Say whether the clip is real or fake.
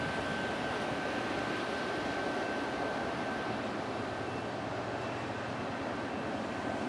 real